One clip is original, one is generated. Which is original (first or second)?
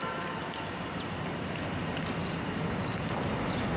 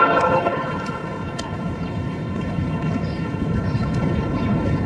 first